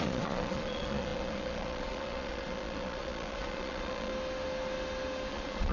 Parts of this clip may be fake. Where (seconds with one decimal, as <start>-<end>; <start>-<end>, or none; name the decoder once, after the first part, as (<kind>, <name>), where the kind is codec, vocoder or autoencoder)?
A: 0.0-4.1 (vocoder, Vocos); 5.3-5.7